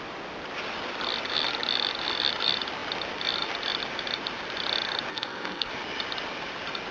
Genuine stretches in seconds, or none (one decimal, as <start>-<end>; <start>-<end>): 0.0-5.1; 5.7-6.9